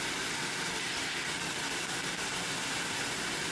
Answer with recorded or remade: recorded